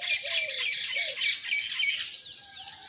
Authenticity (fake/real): real